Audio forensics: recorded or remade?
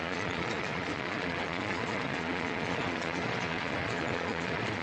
remade